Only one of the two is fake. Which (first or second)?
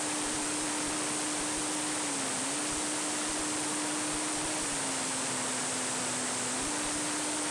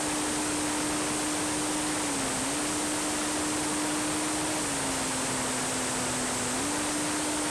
first